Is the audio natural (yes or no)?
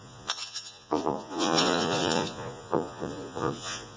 no